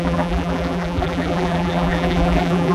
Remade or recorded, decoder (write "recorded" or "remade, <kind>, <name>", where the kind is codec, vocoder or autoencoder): remade, vocoder, BigVGAN v2